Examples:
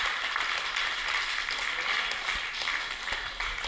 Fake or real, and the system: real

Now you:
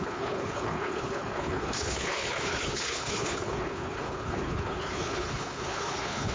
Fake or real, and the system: fake, codec, HILCodec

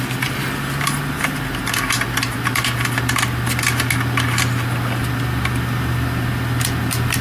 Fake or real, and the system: real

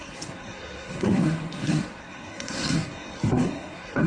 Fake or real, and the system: fake, codec, SNAC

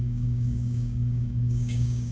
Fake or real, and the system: fake, codec, DAC